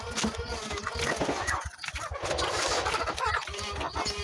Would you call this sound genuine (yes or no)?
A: yes